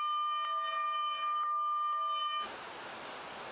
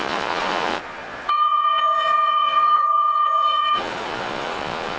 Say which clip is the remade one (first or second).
second